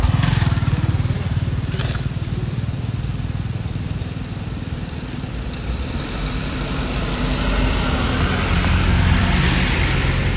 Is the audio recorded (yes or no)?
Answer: no